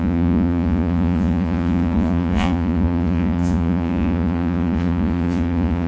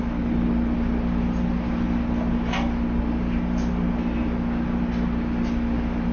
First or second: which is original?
second